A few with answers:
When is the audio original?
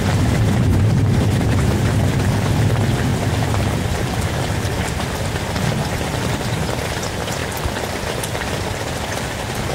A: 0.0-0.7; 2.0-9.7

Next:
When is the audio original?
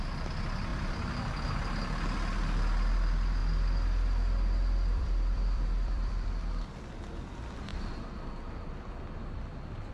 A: 0.0-0.7; 1.3-3.4; 7.2-9.9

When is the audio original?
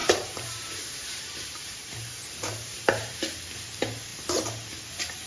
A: 3.2-5.3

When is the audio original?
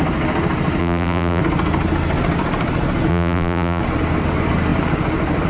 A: 0.0-0.8; 1.4-3.1; 3.8-5.5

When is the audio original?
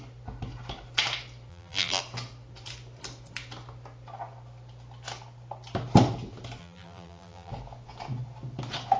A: 0.0-1.5; 2.0-6.6; 7.5-9.0